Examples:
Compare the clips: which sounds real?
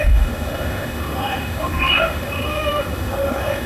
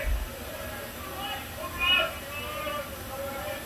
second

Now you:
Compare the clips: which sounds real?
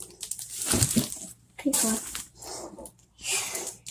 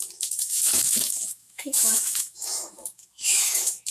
first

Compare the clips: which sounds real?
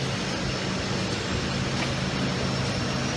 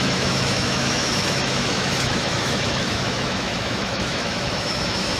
first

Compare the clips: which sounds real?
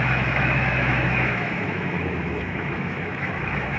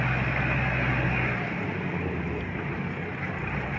second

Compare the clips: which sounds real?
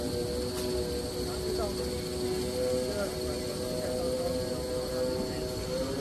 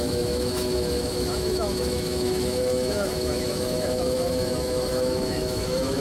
first